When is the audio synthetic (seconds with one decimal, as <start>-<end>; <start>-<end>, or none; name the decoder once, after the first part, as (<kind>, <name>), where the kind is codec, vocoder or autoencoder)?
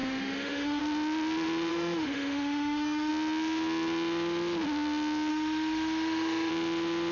0.0-0.8 (autoencoder, DAC-VAE); 1.7-3.1; 5.3-6.5